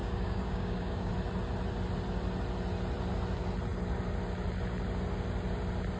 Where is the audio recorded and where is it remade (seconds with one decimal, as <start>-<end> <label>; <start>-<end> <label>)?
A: 0.0-1.1 remade; 1.1-6.0 recorded